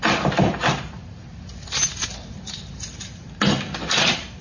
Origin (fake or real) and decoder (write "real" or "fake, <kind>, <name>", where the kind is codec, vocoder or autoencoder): real